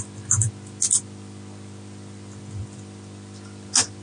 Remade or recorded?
recorded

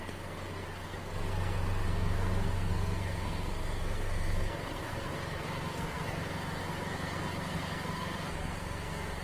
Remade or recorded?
remade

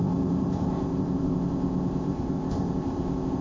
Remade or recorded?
remade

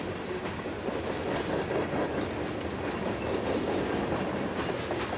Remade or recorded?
recorded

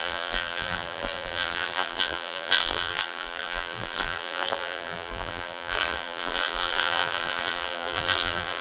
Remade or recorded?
remade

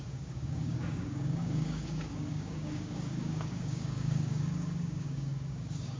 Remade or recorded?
remade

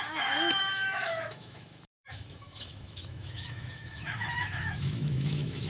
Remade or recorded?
remade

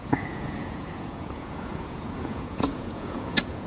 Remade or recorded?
remade